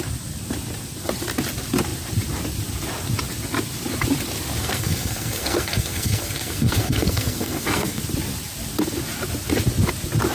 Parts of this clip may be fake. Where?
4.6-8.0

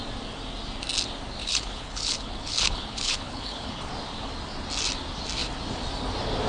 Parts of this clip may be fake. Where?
1.4-3.9

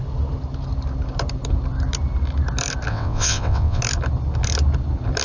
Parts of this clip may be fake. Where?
2.9-3.8

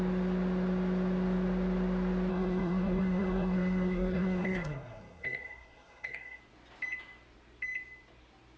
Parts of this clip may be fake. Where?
2.3-6.4